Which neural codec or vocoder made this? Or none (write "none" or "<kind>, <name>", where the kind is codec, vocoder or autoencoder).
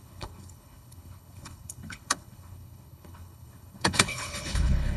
codec, HILCodec